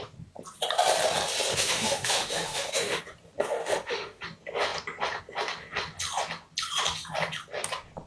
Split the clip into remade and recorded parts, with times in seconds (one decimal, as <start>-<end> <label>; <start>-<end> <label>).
0.0-1.5 recorded; 1.5-3.0 remade; 3.0-3.6 recorded; 3.6-4.2 remade; 4.2-8.1 recorded